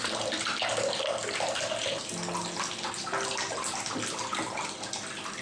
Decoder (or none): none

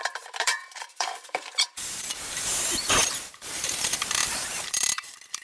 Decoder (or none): vocoder, BigVGAN v2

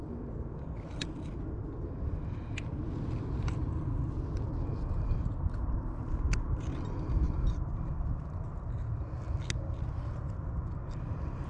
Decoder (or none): none